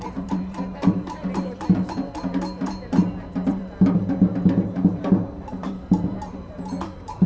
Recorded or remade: remade